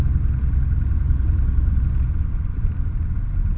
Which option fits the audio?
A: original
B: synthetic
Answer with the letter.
A